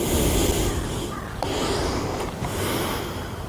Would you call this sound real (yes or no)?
yes